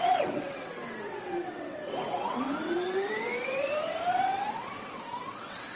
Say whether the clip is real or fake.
fake